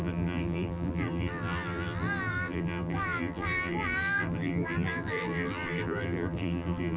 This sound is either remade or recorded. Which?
remade